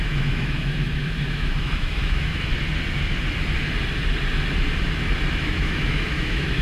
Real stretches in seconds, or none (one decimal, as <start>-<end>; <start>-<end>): 2.5-5.3